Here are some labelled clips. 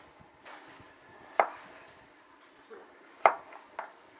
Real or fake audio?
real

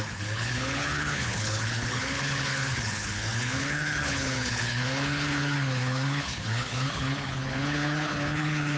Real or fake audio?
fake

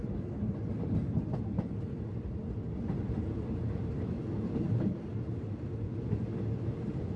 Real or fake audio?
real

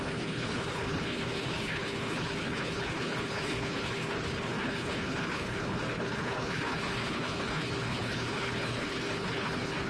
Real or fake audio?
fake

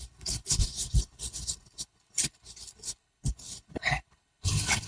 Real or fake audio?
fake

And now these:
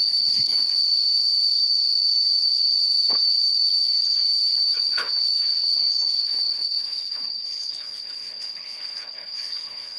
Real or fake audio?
fake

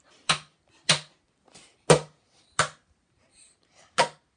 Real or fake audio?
real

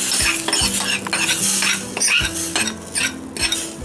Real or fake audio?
real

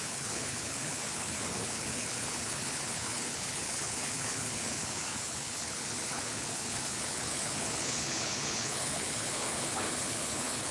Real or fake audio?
fake